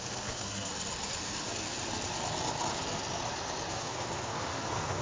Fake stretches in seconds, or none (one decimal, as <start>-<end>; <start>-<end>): 0.0-0.7; 3.7-5.0